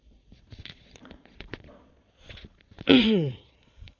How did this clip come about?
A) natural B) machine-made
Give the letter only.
B